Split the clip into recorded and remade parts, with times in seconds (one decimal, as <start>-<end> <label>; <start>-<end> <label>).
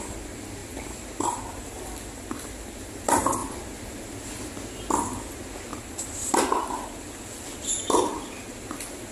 0.0-0.6 recorded; 0.6-2.8 remade; 2.8-5.7 recorded; 5.7-7.6 remade; 7.6-9.1 recorded